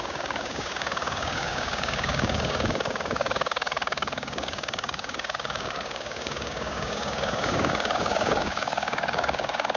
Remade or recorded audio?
remade